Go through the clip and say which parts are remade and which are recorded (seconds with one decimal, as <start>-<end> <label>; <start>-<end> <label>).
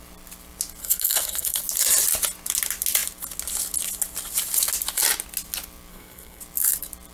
0.0-0.8 recorded; 0.8-1.6 remade; 1.6-5.9 recorded; 5.9-6.4 remade; 6.4-7.1 recorded